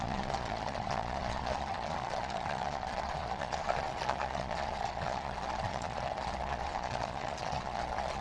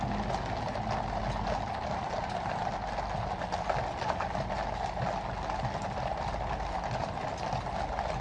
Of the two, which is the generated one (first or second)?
first